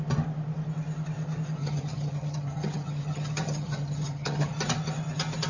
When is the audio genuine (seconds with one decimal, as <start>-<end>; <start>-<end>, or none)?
0.0-1.6; 4.5-5.5